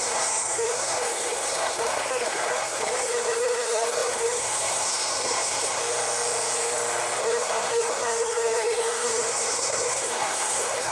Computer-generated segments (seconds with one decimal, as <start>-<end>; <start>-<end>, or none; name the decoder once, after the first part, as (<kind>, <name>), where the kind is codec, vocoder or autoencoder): 0.0-5.8 (codec, SNAC); 7.2-10.9